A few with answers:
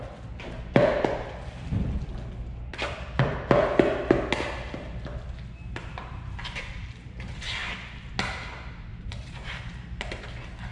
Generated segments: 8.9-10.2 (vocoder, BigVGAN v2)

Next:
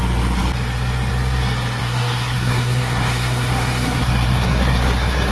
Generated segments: 1.8-5.3 (codec, SNAC)

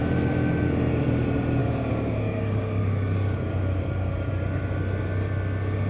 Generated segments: 1.6-4.3 (codec, DAC)